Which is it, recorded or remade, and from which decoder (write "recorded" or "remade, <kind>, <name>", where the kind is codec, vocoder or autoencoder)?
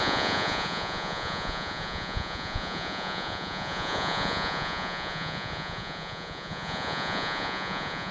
remade, vocoder, Vocos